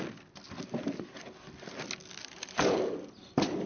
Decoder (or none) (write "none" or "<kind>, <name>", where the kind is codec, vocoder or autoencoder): none